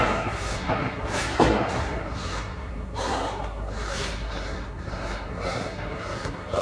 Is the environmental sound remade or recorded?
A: remade